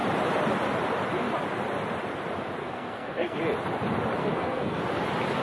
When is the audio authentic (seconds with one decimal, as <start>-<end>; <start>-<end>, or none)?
0.0-2.6; 3.4-4.2; 4.8-5.4